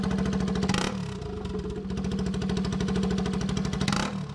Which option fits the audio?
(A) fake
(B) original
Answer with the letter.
B